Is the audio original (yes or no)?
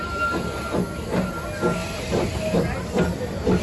yes